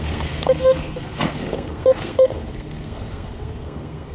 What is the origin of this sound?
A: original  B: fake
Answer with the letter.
B